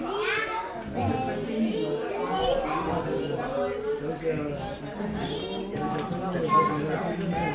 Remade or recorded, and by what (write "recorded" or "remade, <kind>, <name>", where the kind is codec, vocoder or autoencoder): recorded